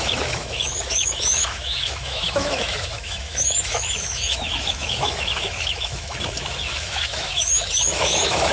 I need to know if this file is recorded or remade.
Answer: remade